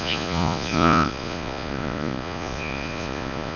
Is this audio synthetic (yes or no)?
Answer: yes